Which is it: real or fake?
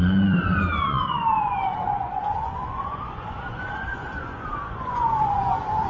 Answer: fake